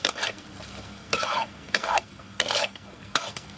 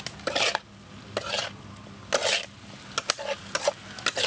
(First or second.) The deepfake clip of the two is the first